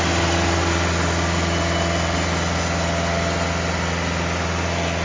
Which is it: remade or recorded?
recorded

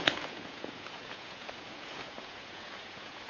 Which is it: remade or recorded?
remade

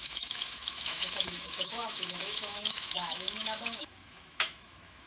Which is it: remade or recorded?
remade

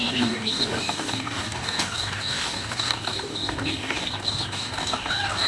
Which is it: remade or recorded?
remade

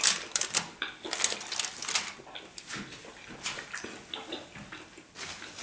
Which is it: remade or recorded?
recorded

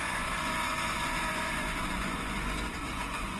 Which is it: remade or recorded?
remade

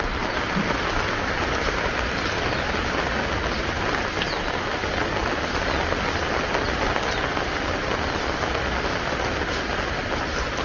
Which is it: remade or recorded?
recorded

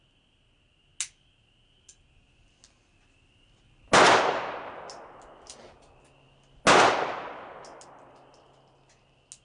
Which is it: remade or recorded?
recorded